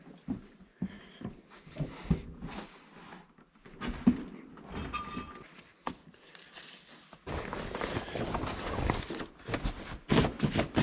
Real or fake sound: real